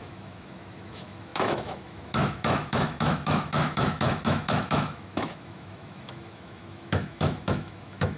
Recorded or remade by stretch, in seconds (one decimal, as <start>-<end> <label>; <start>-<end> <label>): 0.0-8.2 remade